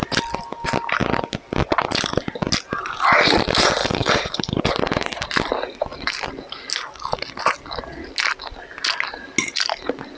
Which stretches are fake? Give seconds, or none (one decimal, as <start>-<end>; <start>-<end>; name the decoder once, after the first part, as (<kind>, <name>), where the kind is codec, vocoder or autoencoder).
3.8-4.6 (codec, HILCodec)